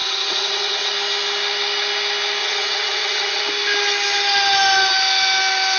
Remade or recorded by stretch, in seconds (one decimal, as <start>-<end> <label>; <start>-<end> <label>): 0.0-0.9 remade; 0.9-2.4 recorded; 2.4-3.4 remade; 3.4-5.8 recorded